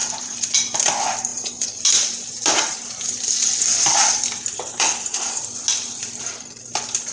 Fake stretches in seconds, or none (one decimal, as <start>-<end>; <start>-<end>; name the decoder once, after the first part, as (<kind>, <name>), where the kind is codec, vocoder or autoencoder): 0.0-0.5 (vocoder, BigVGAN v2); 1.3-5.3